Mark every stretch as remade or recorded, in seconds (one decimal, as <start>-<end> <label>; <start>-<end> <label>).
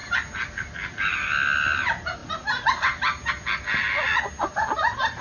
0.0-5.2 recorded